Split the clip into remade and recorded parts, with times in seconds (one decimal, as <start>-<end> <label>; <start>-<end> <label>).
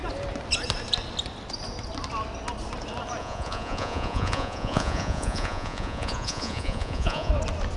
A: 0.0-3.2 recorded; 3.2-7.3 remade; 7.3-7.8 recorded